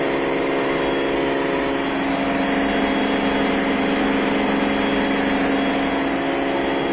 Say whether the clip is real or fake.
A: real